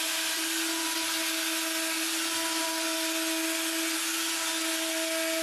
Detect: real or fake real